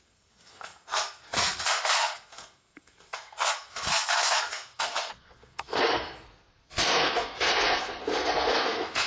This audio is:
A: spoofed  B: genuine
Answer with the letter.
A